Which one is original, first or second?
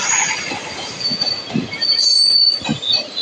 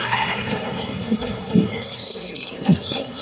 first